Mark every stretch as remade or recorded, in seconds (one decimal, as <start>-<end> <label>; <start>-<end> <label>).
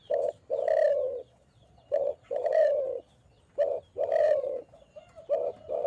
0.0-0.9 recorded; 0.9-3.4 remade; 3.4-4.2 recorded; 4.2-4.9 remade; 4.9-5.9 recorded